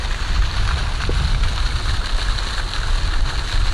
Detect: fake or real real